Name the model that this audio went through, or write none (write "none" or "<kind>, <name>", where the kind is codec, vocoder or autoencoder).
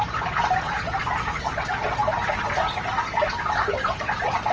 vocoder, BigVGAN v2